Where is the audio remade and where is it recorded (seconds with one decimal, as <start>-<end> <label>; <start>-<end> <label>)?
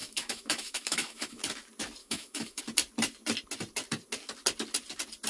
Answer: 0.0-1.4 remade; 1.4-2.0 recorded; 2.0-2.6 remade; 2.6-5.3 recorded